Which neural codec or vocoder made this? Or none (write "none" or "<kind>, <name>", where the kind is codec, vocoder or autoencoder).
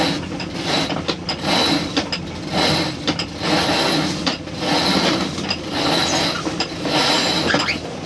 none